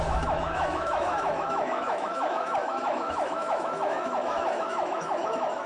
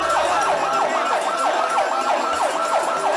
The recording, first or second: second